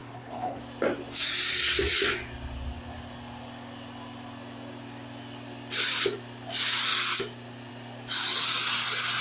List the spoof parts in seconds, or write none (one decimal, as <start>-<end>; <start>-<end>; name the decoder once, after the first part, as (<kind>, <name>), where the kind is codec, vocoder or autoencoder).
0.0-0.6 (codec, HILCodec)